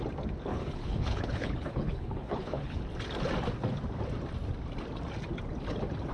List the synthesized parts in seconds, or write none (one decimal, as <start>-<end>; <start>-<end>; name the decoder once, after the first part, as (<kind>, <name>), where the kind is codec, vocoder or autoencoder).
0.5-2.8 (codec, HILCodec)